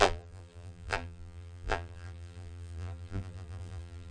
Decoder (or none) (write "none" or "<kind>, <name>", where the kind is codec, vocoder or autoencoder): vocoder, BigVGAN v2